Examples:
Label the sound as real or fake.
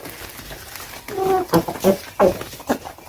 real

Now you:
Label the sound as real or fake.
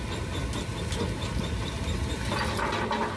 real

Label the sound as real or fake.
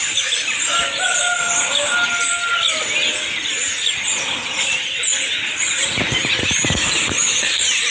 real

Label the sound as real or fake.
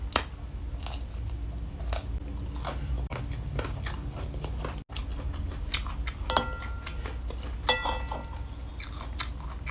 real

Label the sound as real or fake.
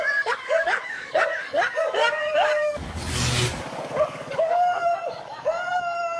fake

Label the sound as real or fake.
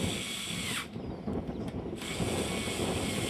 real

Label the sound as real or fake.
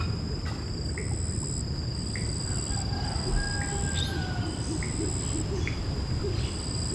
real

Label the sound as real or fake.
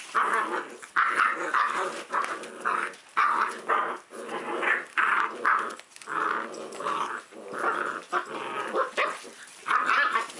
real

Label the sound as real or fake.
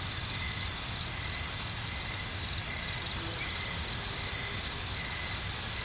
real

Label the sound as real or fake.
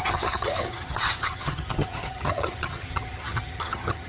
fake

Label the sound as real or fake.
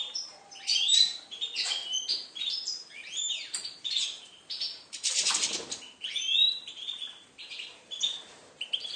fake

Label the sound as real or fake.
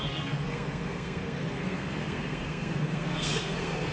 fake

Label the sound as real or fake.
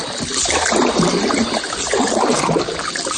real